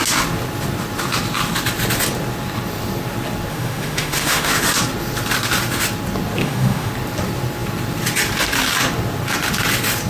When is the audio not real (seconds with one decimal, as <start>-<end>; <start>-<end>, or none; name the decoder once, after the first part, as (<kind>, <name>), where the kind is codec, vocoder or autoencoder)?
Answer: 3.5-4.6 (autoencoder, DAC-VAE); 6.4-6.9